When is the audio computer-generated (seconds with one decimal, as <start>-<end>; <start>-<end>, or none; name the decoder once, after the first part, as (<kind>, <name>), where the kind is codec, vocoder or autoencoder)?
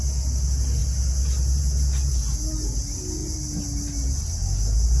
none